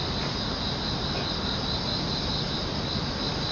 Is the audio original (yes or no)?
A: yes